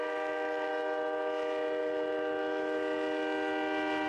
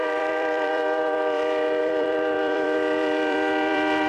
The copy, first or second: second